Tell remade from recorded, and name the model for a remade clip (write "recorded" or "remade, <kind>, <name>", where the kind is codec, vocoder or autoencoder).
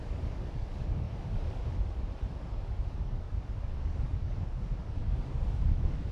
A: remade, codec, DAC